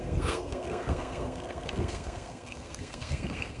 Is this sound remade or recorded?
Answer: remade